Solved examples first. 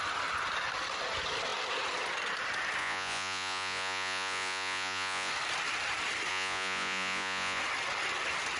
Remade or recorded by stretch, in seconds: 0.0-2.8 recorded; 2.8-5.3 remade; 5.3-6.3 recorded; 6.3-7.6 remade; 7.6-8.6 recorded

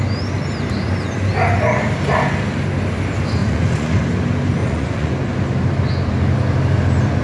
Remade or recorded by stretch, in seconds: 0.0-3.4 recorded; 3.4-4.0 remade; 4.0-4.6 recorded; 4.6-5.1 remade; 5.1-7.2 recorded